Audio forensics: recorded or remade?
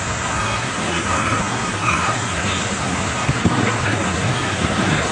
remade